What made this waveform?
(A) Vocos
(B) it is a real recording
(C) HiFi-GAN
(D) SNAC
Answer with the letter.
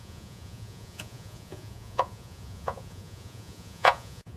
A